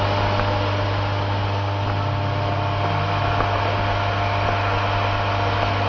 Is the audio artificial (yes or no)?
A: no